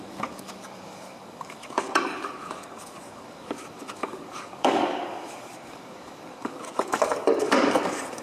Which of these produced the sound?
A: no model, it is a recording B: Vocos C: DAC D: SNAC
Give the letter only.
C